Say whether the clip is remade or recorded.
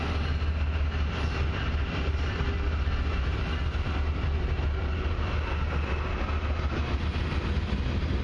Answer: recorded